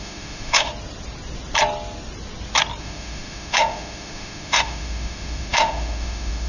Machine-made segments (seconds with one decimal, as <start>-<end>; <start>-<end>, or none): 0.0-0.7; 2.8-6.5

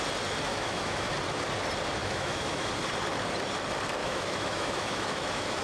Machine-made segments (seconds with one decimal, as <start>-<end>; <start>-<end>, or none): 0.5-1.1; 2.0-2.7; 4.0-5.6

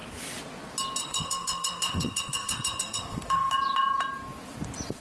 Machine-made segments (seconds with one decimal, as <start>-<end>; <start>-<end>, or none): 1.0-3.5

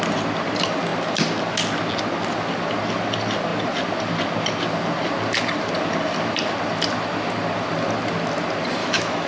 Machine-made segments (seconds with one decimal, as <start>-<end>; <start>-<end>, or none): 8.8-9.3

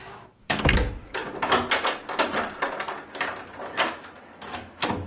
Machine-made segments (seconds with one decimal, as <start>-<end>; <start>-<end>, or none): 0.0-1.2; 3.9-5.1

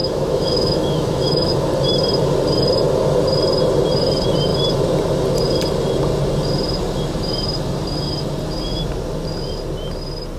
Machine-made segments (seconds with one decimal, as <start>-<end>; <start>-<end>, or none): 0.0-1.5

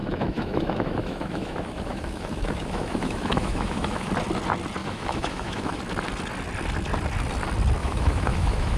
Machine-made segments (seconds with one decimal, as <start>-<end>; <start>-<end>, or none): 0.0-4.1; 4.8-5.8; 7.8-8.8